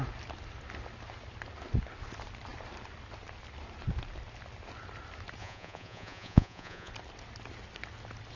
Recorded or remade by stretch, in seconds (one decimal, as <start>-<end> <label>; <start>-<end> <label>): 0.0-5.4 recorded; 5.4-6.9 remade; 6.9-8.4 recorded